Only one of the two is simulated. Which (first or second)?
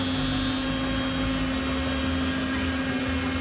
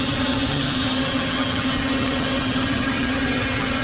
second